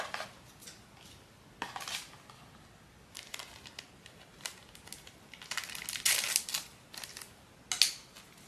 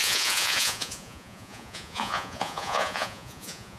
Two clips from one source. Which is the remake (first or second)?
second